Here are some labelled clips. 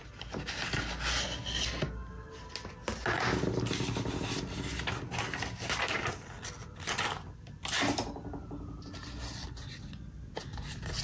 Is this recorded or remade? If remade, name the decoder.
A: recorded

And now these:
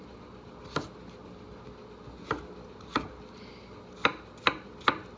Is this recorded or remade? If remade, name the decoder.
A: recorded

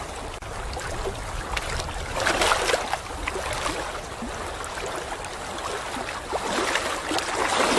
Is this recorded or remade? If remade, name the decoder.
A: recorded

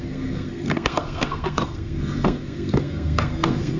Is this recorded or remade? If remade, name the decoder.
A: remade, codec, SNAC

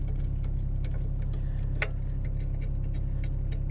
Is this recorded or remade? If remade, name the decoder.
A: recorded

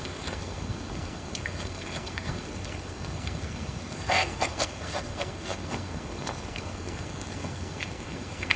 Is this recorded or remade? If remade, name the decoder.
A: remade, codec, SNAC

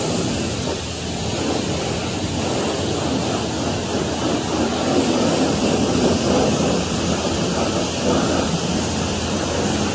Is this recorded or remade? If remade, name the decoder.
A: recorded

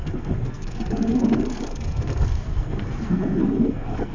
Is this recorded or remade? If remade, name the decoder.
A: remade, codec, SNAC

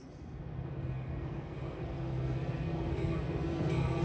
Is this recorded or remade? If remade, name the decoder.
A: remade, codec, SNAC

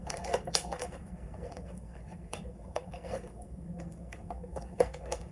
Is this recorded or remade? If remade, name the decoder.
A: remade, codec, SNAC